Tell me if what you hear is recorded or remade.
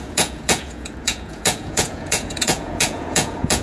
remade